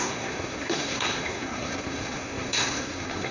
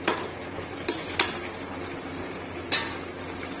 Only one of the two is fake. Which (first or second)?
first